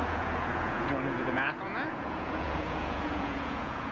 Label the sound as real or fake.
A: fake